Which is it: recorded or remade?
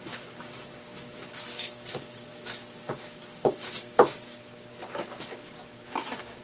remade